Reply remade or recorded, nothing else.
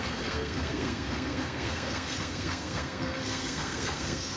remade